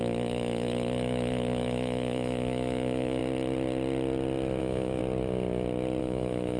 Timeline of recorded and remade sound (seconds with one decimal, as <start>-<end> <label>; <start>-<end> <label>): 0.0-3.2 remade; 3.2-4.6 recorded; 4.6-5.0 remade; 5.0-6.0 recorded; 6.0-6.6 remade